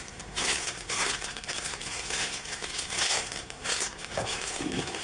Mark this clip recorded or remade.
remade